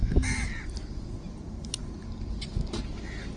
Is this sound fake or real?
real